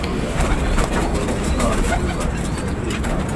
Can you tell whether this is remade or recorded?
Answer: remade